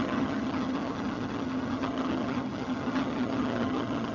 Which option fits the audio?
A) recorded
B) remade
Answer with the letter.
B